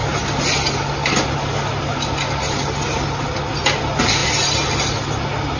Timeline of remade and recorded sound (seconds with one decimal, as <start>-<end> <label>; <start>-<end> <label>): 0.0-5.6 recorded